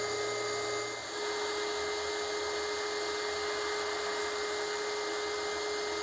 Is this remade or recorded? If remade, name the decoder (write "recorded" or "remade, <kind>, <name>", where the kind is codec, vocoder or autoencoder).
recorded